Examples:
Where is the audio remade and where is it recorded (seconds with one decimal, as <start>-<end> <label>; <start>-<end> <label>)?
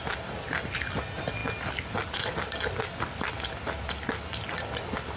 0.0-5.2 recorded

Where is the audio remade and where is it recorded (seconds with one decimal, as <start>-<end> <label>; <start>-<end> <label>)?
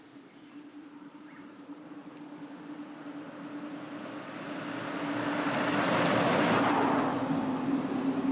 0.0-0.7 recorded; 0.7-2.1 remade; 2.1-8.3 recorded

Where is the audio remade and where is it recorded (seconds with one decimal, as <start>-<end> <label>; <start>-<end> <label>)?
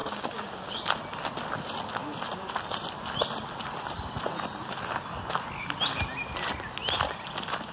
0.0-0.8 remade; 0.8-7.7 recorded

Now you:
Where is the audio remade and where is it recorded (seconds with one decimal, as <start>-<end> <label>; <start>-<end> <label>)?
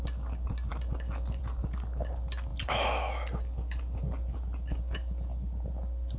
0.0-6.2 recorded